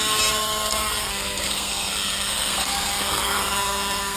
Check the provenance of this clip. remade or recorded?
remade